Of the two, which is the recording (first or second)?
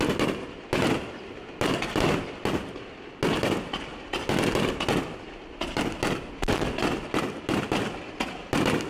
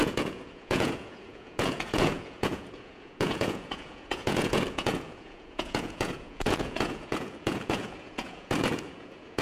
first